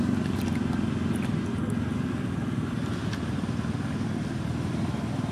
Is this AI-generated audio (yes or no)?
no